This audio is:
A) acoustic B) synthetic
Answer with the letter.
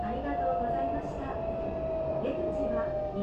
A